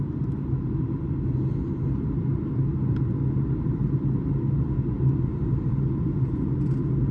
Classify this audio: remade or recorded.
recorded